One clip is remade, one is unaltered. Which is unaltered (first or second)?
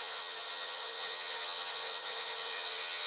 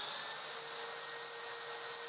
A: second